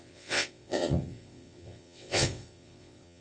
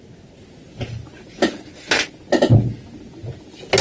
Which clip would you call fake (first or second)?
first